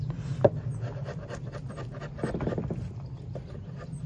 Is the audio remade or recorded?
recorded